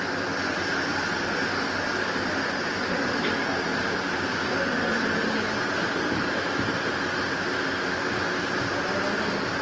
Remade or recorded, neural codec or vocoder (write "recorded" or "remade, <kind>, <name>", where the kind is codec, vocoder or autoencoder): recorded